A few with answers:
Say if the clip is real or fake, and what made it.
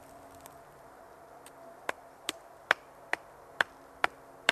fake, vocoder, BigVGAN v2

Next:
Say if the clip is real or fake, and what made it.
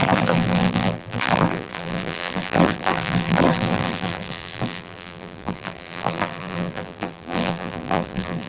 fake, vocoder, BigVGAN v2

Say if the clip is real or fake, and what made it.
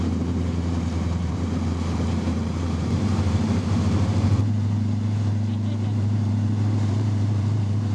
fake, vocoder, BigVGAN v2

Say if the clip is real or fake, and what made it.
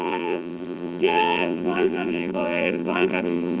fake, vocoder, BigVGAN v2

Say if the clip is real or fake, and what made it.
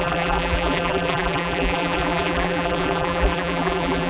fake, vocoder, BigVGAN v2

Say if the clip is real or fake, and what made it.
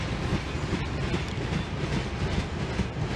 real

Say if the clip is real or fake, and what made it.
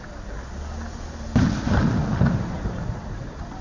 real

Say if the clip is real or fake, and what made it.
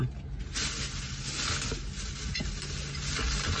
real